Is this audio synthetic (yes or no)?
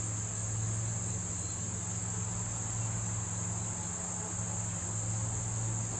no